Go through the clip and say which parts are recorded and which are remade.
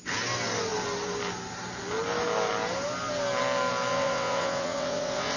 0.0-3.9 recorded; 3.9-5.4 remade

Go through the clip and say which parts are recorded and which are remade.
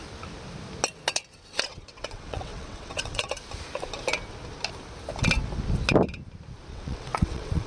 0.0-1.7 recorded; 1.7-3.3 remade; 3.3-6.7 recorded; 6.7-7.7 remade